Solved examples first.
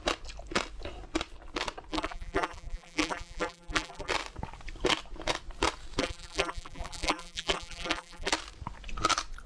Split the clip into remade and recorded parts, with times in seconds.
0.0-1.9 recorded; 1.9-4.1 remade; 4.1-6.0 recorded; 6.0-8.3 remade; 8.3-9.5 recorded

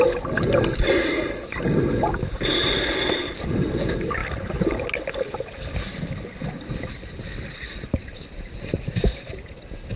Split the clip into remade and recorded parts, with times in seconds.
0.0-10.0 recorded

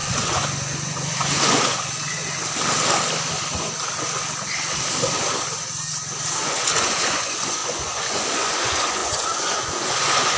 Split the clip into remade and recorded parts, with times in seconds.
0.0-2.2 remade; 2.2-6.4 recorded; 6.4-10.4 remade

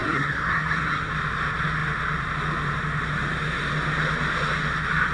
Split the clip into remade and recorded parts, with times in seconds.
0.0-1.1 remade; 1.1-5.1 recorded

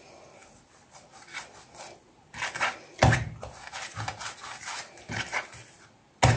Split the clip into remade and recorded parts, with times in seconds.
0.0-6.4 recorded

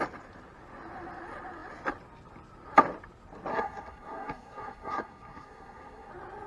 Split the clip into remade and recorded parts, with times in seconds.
0.0-3.5 recorded; 3.5-6.1 remade; 6.1-6.5 recorded

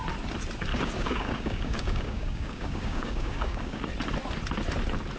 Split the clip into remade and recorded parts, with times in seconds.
0.0-0.7 recorded; 0.7-3.8 remade; 3.8-5.2 recorded

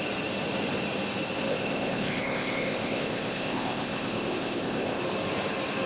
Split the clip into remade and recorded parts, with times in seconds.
0.0-1.5 recorded; 1.5-5.0 remade; 5.0-5.9 recorded